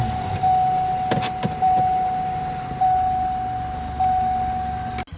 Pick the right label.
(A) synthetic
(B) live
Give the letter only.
B